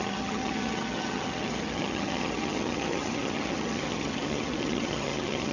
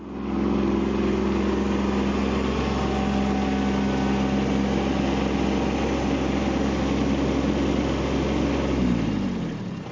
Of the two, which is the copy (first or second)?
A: first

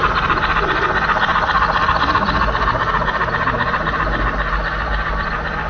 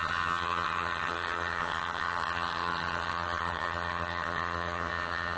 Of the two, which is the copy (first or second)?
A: second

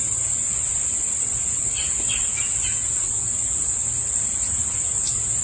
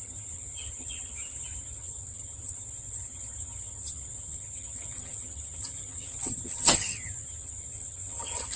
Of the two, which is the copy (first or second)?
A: second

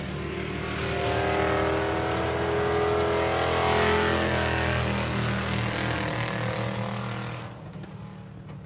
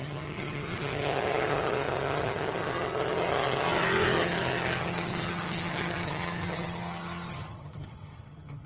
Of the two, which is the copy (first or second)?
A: second